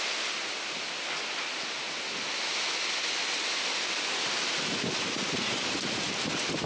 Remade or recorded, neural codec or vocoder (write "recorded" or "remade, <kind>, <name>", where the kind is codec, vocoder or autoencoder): recorded